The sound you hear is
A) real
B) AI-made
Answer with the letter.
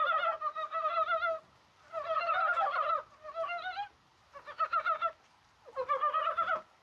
A